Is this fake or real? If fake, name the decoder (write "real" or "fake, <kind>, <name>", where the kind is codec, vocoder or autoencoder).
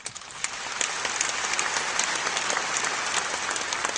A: real